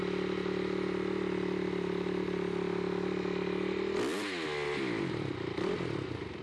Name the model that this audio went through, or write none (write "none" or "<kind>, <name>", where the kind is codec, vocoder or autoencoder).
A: none